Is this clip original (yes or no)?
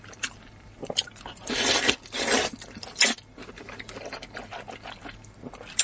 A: yes